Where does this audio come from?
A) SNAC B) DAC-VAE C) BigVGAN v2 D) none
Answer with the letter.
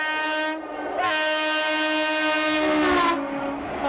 D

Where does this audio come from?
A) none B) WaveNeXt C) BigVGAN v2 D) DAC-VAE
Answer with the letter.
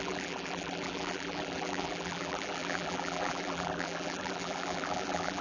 C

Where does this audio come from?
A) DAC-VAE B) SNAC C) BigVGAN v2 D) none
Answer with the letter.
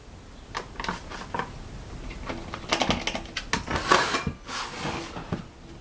D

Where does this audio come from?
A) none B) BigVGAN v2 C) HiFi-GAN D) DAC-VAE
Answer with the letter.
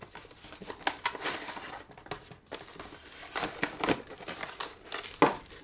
A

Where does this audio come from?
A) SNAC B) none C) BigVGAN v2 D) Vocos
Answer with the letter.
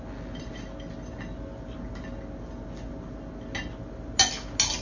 B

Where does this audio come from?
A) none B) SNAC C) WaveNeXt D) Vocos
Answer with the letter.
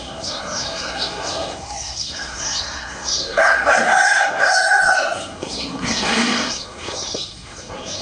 B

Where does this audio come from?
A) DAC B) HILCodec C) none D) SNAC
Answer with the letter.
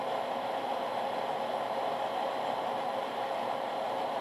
C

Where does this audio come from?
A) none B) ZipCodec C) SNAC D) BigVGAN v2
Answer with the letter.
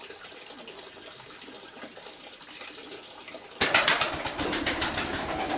A